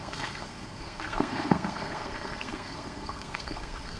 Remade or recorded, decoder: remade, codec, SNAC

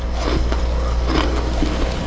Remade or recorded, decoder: recorded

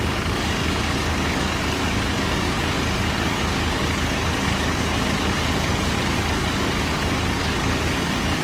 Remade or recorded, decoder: remade, codec, DAC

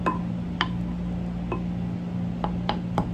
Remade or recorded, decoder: recorded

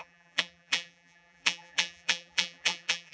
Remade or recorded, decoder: remade, vocoder, BigVGAN v2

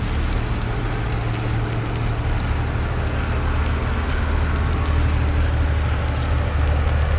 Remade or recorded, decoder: recorded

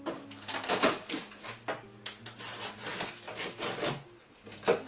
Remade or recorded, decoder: recorded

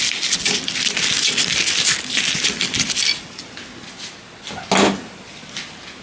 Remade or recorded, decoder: recorded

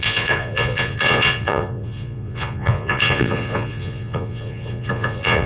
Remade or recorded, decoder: remade, vocoder, Vocos